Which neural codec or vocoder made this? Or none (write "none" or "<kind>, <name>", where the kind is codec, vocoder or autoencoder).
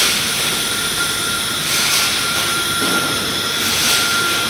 vocoder, BigVGAN v2